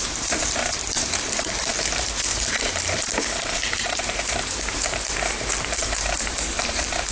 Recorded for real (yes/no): no